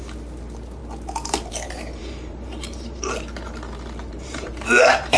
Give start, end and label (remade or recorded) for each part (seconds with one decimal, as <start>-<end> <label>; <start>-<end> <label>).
0.0-2.0 recorded; 2.0-3.1 remade; 3.1-4.1 recorded; 4.1-5.2 remade

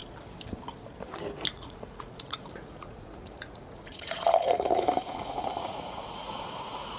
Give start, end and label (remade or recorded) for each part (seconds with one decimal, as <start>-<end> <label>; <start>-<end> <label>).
0.0-1.5 recorded; 1.5-7.0 remade